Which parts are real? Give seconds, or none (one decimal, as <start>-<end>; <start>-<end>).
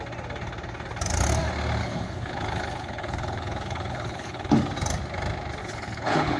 0.0-1.8; 4.5-5.6